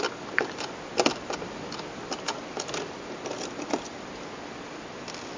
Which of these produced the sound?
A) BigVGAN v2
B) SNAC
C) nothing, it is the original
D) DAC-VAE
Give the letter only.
C